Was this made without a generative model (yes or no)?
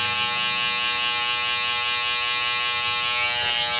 yes